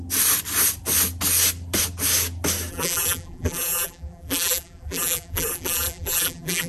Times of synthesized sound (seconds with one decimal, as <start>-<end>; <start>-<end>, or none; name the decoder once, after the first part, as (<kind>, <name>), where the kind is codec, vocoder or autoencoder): 2.7-6.7 (vocoder, BigVGAN v2)